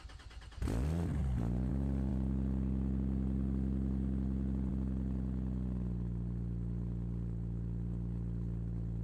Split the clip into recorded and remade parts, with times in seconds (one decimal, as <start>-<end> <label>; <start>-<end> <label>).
0.0-1.2 remade; 1.2-1.7 recorded; 1.7-2.1 remade; 2.1-4.7 recorded; 4.7-9.0 remade